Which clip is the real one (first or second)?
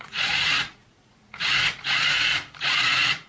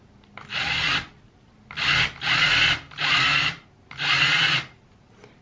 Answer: second